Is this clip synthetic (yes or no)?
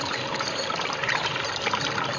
no